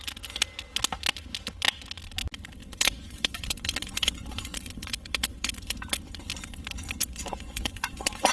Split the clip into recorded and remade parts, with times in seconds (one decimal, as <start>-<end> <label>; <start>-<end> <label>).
0.0-2.6 recorded; 2.6-6.0 remade; 6.0-7.0 recorded; 7.0-8.3 remade